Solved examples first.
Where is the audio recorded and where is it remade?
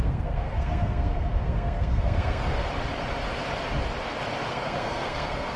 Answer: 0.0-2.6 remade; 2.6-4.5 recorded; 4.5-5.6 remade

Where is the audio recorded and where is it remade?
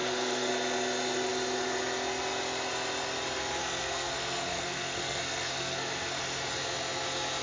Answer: 0.0-0.5 remade; 0.5-3.6 recorded; 3.6-6.2 remade; 6.2-7.4 recorded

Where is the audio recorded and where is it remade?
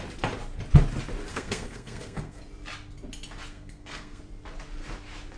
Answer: 0.0-1.3 recorded; 1.3-2.4 remade; 2.4-3.5 recorded; 3.5-4.2 remade; 4.2-5.4 recorded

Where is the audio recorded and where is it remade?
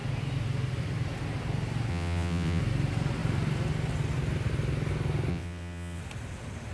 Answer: 0.0-1.9 recorded; 1.9-2.6 remade; 2.6-5.3 recorded; 5.3-6.0 remade; 6.0-6.7 recorded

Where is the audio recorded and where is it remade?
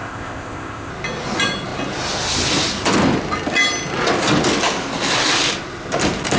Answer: 0.0-0.9 remade; 0.9-6.4 recorded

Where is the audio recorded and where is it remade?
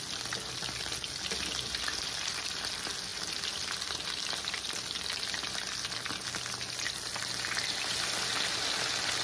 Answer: 0.0-9.2 recorded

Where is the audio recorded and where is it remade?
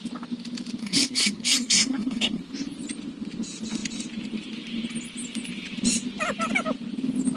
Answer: 0.0-0.8 recorded; 0.8-2.4 remade; 2.4-7.4 recorded